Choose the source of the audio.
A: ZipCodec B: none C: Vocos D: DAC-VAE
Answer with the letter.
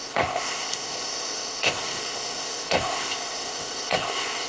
A